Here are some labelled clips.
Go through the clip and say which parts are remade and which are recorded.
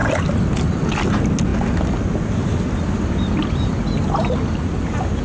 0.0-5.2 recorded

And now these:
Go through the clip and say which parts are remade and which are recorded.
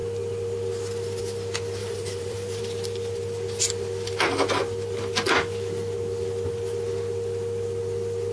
0.0-1.8 recorded; 1.8-2.6 remade; 2.6-8.3 recorded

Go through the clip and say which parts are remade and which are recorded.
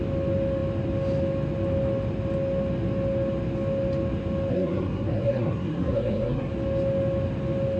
0.0-4.5 recorded; 4.5-6.5 remade; 6.5-7.8 recorded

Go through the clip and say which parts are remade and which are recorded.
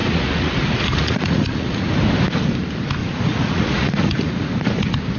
0.0-1.9 remade; 1.9-3.0 recorded; 3.0-4.6 remade; 4.6-5.2 recorded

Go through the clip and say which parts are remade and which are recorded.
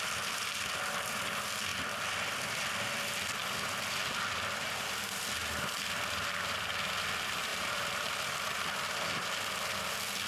0.0-7.5 recorded; 7.5-8.1 remade; 8.1-10.3 recorded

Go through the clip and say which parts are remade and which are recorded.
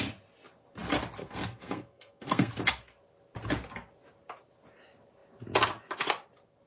0.0-1.2 recorded; 1.2-2.5 remade; 2.5-6.7 recorded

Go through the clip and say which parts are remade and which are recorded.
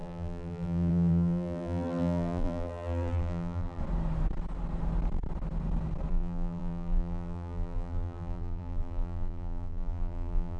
0.0-3.8 remade; 3.8-6.1 recorded; 6.1-10.6 remade